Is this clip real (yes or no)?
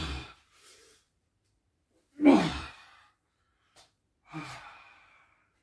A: no